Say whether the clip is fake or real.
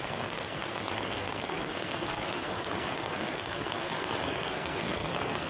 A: fake